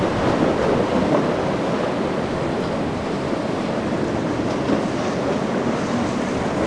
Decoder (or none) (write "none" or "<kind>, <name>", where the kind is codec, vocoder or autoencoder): none